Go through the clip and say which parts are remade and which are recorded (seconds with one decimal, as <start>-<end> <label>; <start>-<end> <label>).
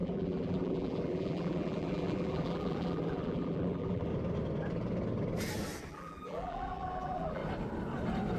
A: 0.0-4.1 remade; 4.1-5.9 recorded; 5.9-7.4 remade; 7.4-8.4 recorded